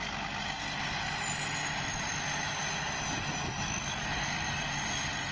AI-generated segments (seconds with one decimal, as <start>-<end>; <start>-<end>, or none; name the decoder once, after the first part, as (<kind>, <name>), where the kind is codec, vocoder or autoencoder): none